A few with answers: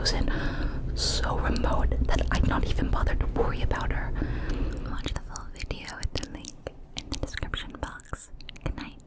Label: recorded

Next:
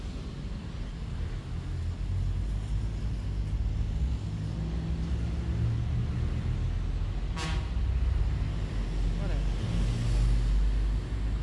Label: recorded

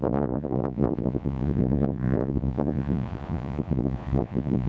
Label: remade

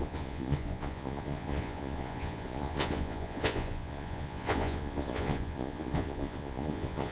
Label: remade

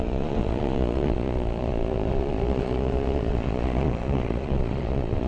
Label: remade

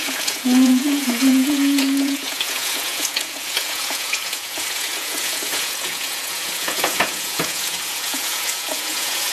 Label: remade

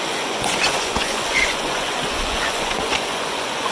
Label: remade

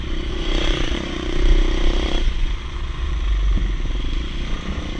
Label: remade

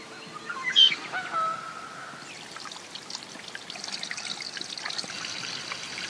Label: recorded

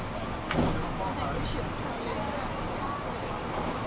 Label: recorded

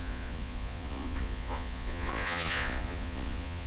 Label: remade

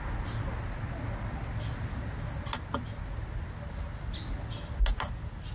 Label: recorded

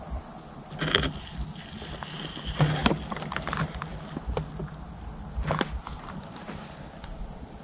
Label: recorded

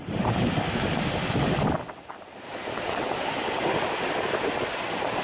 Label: recorded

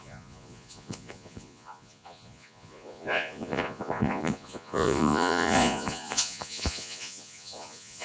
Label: remade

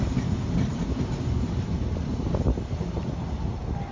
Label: recorded